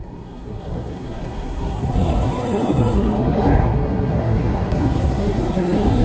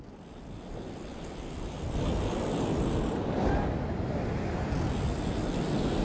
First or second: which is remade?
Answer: first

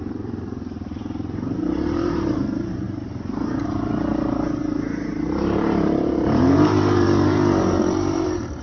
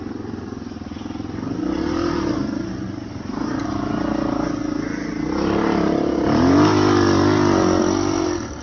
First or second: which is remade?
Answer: first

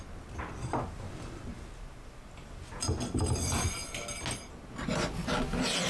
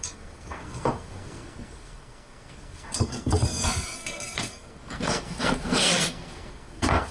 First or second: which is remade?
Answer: second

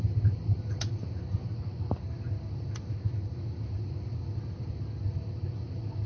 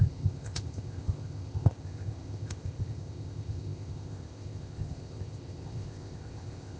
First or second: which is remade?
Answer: second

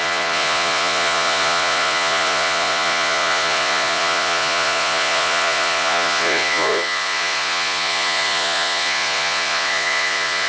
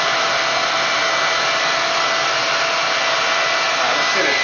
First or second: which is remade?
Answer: first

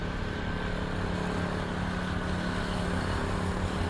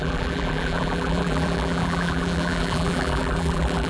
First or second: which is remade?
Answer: second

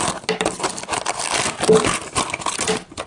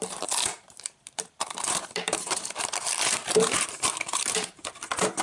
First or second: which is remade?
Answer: second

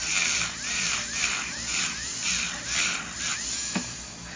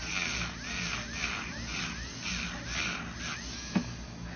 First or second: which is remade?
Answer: first